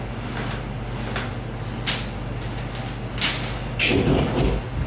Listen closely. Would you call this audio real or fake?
real